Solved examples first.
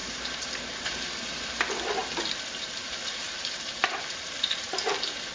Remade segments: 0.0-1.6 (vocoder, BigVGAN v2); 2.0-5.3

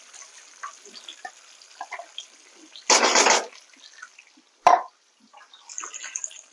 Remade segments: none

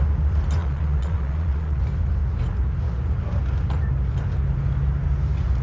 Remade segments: 0.6-1.8 (vocoder, Vocos)